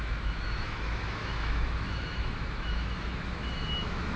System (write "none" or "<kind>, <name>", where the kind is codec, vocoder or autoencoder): autoencoder, DAC-VAE